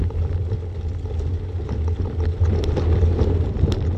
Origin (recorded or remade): recorded